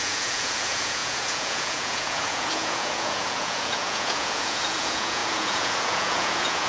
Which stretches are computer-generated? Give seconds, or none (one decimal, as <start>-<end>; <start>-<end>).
0.0-6.7